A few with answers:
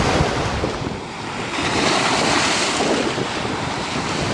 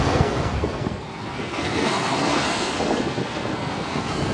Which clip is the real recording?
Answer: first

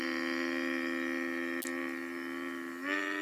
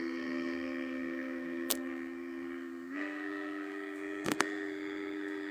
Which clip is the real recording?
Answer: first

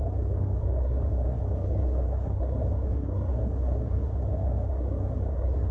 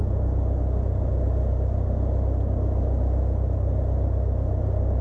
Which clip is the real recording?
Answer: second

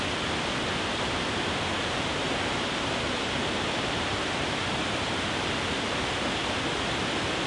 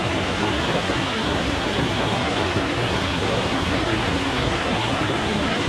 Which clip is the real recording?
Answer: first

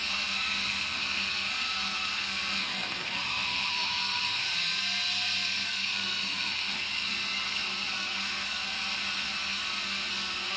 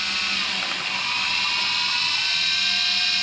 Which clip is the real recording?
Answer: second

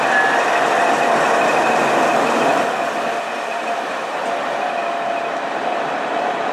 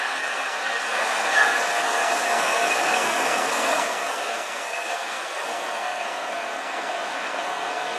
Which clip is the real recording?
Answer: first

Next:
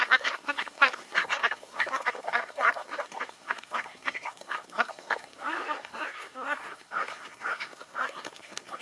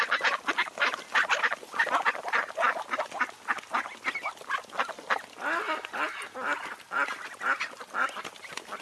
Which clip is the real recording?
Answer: second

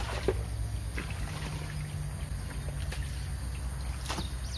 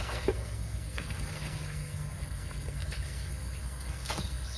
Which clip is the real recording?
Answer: first